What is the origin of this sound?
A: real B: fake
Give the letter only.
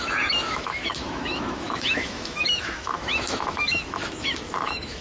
B